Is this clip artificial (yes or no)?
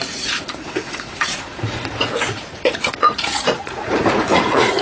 yes